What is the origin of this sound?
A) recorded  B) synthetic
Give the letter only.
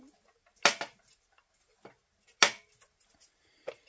A